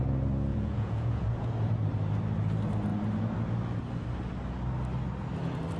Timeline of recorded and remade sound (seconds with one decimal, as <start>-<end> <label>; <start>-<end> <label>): 0.0-0.5 recorded; 0.5-1.5 remade; 1.5-5.8 recorded